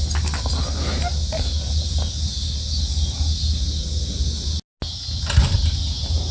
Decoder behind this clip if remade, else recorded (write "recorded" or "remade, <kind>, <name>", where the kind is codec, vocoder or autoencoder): recorded